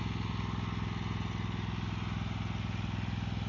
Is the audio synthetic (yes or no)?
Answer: no